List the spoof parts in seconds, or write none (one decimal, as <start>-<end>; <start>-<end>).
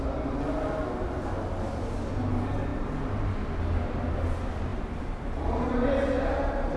none